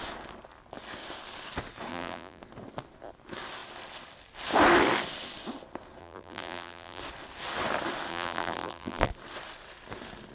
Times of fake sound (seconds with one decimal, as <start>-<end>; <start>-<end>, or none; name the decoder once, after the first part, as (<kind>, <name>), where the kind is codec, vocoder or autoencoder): 1.9-2.4 (vocoder, BigVGAN v2); 6.0-7.0; 8.1-9.1